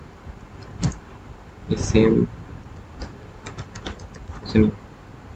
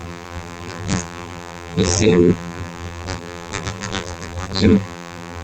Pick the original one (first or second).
first